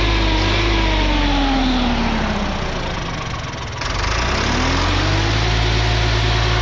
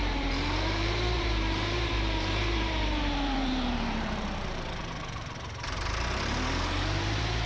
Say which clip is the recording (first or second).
first